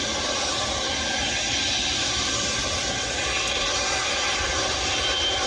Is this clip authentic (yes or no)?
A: yes